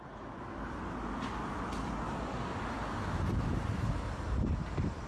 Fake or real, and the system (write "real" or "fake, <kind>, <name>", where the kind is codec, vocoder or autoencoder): real